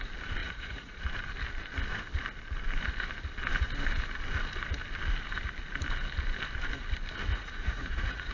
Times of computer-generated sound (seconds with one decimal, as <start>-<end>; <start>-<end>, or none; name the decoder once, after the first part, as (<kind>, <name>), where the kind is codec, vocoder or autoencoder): 0.4-1.0 (vocoder, Vocos); 7.3-8.3